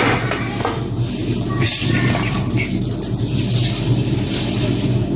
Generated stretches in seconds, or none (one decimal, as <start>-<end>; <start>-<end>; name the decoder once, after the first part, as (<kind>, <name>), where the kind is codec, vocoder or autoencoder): none